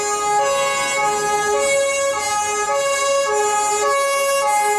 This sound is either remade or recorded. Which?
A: recorded